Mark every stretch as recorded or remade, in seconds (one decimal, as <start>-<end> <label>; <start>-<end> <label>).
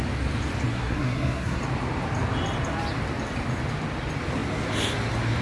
0.0-0.7 recorded; 0.7-1.6 remade; 1.6-5.4 recorded